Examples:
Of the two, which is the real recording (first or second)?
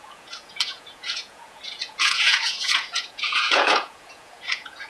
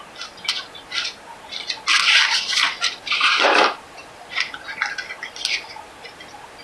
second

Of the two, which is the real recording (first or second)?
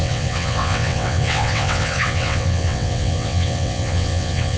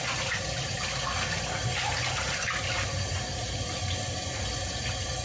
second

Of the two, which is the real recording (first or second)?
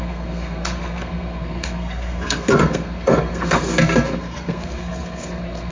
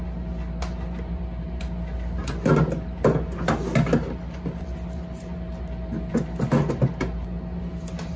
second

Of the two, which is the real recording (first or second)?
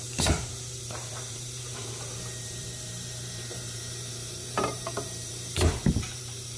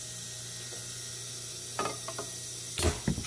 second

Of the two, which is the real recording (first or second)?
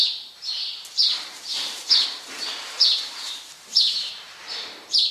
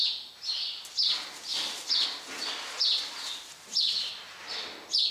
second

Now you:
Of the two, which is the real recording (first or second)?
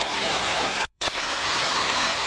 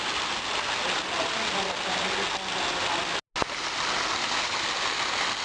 second